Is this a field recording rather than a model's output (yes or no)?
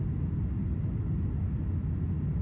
yes